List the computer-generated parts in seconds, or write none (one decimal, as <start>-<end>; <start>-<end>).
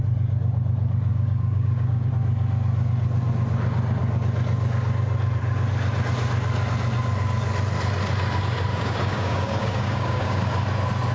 1.1-2.1; 8.7-10.4